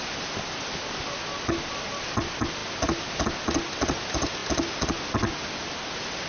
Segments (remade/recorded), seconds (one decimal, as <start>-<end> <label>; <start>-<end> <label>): 0.0-6.3 recorded

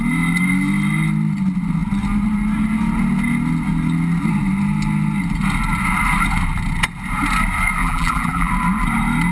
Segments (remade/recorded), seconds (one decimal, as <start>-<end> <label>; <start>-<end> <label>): 0.0-7.8 recorded; 7.8-8.5 remade; 8.5-9.3 recorded

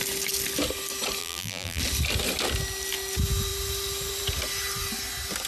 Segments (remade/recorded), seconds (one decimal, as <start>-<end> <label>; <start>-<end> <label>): 0.0-1.2 recorded; 1.2-1.8 remade; 1.8-5.5 recorded

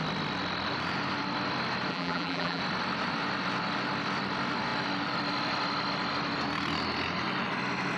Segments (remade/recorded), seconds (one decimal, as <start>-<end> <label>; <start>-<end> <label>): 0.0-1.9 recorded; 1.9-2.6 remade; 2.6-8.0 recorded

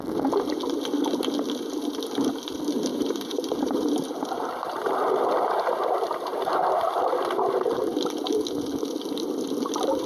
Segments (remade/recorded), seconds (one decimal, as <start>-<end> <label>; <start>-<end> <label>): 0.0-2.9 recorded; 2.9-5.2 remade; 5.2-6.3 recorded; 6.3-7.0 remade; 7.0-10.1 recorded

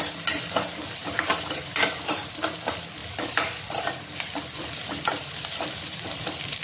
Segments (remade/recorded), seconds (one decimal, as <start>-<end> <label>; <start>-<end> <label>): 0.0-1.0 recorded; 1.0-2.3 remade; 2.3-3.0 recorded; 3.0-6.6 remade